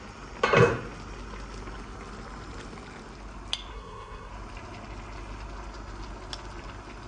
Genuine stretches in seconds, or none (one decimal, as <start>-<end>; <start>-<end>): 0.0-3.7; 4.3-7.1